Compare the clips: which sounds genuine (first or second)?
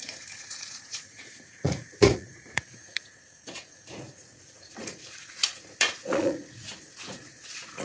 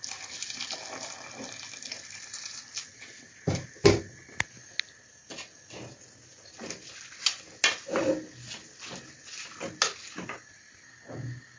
second